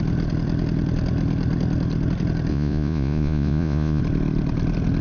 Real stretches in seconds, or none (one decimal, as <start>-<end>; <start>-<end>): 0.0-2.5; 4.0-5.0